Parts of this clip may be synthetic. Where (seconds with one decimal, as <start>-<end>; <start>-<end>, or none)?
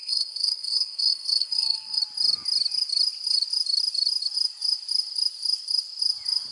0.0-2.0